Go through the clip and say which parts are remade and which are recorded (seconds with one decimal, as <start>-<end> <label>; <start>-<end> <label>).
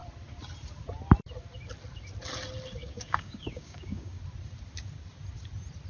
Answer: 0.0-2.8 recorded; 2.8-4.2 remade; 4.2-5.9 recorded